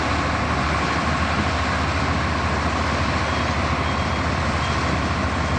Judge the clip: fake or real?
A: real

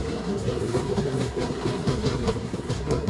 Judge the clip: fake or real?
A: fake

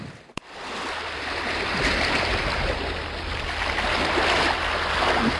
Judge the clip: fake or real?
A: real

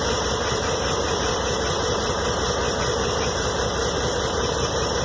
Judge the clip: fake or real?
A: fake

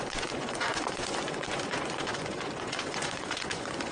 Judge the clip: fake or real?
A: fake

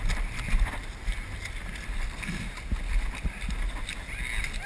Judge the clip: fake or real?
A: real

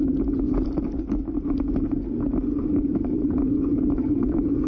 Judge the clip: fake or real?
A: real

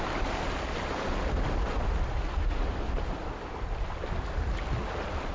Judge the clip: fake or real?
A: real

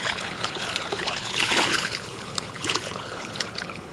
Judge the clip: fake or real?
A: fake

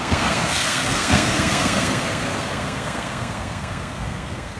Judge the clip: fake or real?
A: fake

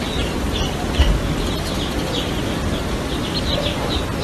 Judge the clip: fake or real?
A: real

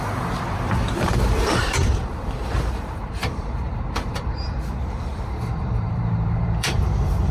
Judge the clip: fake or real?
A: fake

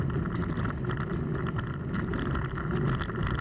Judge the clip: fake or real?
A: real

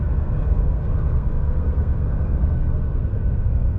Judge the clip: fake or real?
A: fake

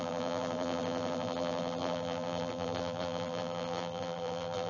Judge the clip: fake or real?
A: fake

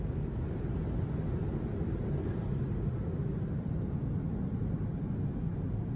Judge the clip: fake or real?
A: real